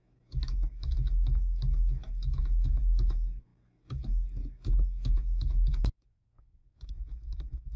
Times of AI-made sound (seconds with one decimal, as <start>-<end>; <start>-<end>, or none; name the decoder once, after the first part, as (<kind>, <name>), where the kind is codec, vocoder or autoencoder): 0.0-7.8 (autoencoder, DAC-VAE)